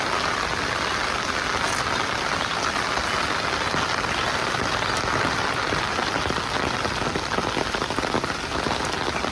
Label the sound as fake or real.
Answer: real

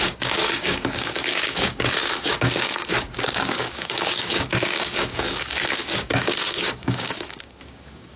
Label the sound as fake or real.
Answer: fake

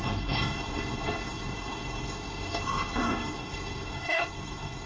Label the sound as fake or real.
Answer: fake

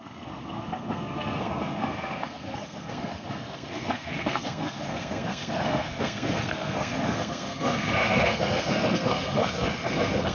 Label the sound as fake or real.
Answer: fake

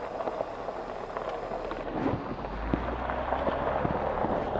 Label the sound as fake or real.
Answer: real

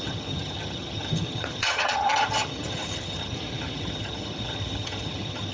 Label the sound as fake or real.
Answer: fake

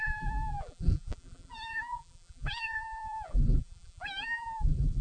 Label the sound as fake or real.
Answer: fake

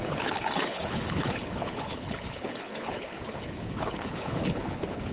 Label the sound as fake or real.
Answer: fake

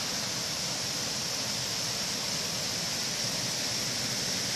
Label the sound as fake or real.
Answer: real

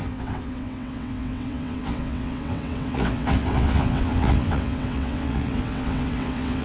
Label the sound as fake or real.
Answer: fake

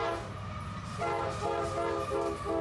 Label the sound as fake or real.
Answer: real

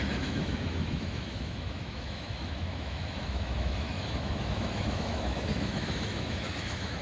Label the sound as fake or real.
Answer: fake